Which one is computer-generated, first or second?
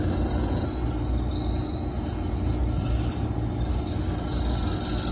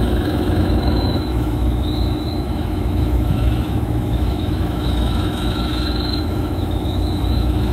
second